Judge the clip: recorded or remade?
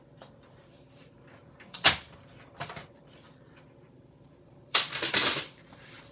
remade